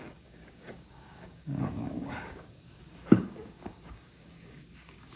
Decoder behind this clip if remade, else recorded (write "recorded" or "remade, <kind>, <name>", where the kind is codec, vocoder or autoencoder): remade, codec, DAC